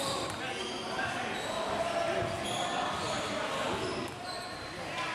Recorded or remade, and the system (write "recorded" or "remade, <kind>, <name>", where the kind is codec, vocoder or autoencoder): recorded